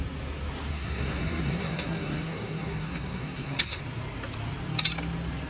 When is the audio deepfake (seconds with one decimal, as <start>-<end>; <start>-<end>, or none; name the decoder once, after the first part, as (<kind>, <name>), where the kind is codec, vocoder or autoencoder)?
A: 0.7-3.8 (codec, SNAC)